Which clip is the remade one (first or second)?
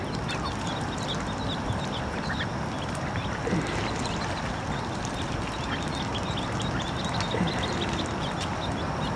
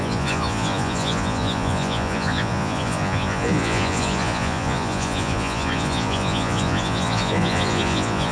second